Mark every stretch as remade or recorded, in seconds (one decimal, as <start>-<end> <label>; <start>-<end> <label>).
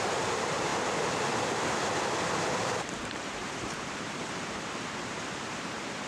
0.0-0.7 remade; 0.7-2.9 recorded; 2.9-6.1 remade